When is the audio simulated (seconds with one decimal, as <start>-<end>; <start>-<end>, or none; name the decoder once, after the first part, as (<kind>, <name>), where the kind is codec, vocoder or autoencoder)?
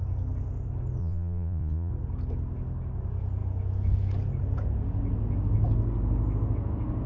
1.0-1.9 (vocoder, Vocos)